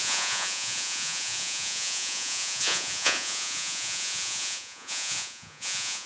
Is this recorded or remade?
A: remade